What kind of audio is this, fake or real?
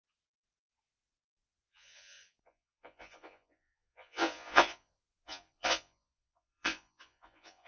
fake